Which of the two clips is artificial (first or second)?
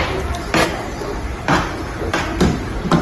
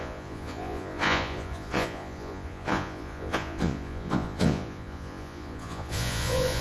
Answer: second